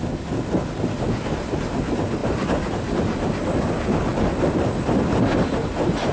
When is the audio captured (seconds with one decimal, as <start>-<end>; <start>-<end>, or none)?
0.0-2.2; 5.2-6.1